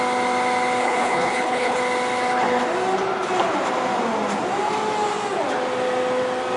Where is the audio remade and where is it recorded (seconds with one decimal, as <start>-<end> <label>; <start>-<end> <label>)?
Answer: 0.0-0.8 recorded; 0.8-1.8 remade; 1.8-6.6 recorded